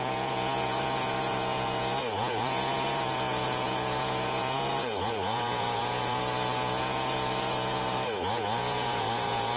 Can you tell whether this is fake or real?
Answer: fake